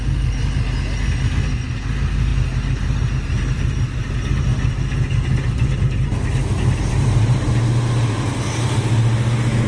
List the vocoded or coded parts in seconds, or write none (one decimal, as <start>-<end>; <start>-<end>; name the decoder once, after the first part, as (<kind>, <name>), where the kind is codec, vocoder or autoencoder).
none